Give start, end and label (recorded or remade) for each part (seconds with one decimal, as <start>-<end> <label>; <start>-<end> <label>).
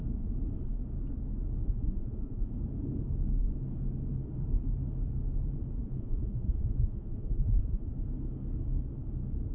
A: 0.0-1.6 recorded; 1.6-2.5 remade; 2.5-5.8 recorded; 5.8-7.9 remade; 7.9-9.5 recorded